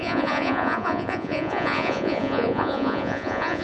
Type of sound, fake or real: fake